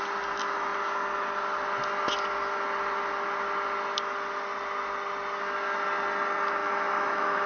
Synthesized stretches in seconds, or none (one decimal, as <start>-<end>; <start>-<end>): 6.6-7.5